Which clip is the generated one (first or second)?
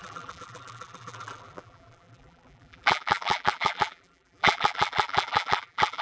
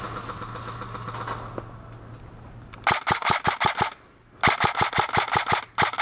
first